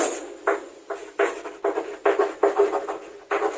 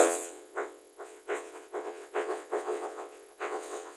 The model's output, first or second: second